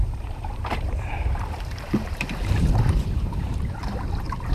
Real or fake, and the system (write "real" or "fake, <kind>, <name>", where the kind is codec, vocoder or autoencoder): fake, vocoder, BigVGAN v2